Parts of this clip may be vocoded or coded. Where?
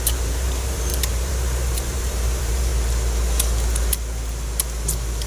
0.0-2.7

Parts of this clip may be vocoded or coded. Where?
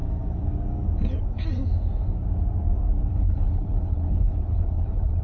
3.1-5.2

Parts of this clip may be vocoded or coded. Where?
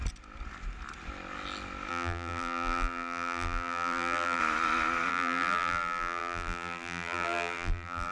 1.9-4.4; 5.1-8.1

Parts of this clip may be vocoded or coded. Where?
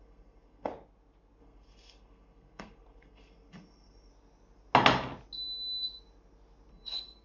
0.0-0.7; 1.4-4.1; 6.7-7.2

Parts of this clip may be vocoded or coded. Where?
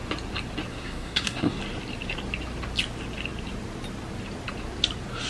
0.7-1.6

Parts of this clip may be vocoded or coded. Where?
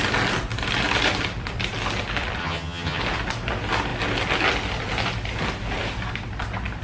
2.4-3.0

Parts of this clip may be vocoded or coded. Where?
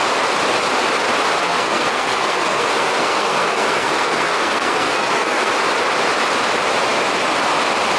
1.4-5.5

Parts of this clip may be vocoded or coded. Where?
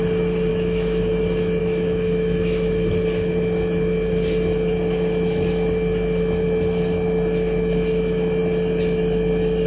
0.5-1.2; 1.6-2.9